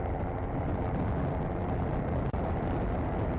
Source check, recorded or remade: recorded